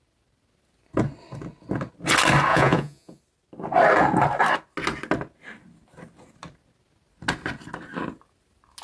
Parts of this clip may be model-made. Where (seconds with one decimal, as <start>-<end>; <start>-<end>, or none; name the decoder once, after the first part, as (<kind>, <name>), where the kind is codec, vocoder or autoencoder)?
2.5-3.2 (vocoder, Vocos)